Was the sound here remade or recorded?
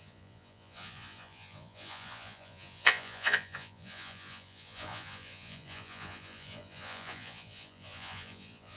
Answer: remade